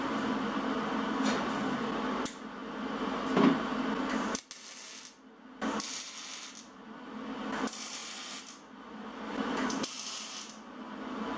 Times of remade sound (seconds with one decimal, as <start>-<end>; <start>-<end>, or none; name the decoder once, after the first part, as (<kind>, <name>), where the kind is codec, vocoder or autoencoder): 0.0-2.6 (vocoder, BigVGAN v2); 7.1-11.4